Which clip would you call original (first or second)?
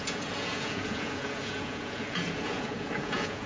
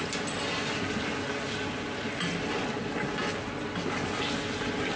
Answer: second